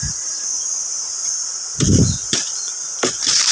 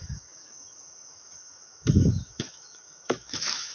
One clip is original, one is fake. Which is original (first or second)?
first